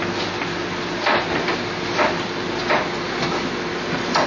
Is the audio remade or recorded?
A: recorded